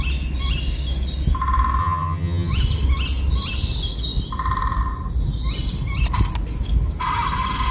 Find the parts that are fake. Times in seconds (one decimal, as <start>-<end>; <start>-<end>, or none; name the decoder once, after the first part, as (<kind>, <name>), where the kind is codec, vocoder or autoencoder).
1.8-2.5 (vocoder, HiFi-GAN)